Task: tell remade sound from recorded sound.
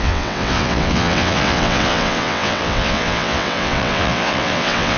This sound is remade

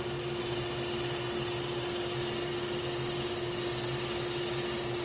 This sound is recorded